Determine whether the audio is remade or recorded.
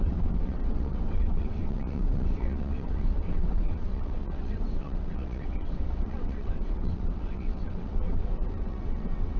remade